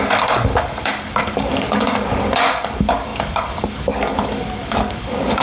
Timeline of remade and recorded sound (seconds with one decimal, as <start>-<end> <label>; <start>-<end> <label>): 0.0-5.4 remade